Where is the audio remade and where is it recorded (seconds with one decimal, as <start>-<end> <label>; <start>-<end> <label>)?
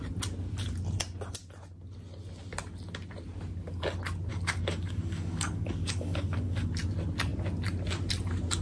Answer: 0.0-4.3 recorded; 4.3-6.7 remade; 6.7-8.6 recorded